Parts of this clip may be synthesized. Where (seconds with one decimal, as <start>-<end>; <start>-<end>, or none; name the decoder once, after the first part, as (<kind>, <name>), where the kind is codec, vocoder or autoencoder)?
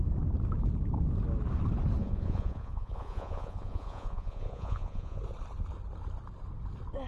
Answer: 2.0-5.2 (vocoder, Vocos)